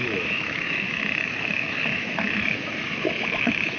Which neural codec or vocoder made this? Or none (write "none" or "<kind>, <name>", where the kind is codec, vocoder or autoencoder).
autoencoder, DAC-VAE